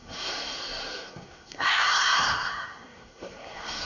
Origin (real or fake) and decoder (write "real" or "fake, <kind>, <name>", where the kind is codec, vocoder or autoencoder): fake, codec, SNAC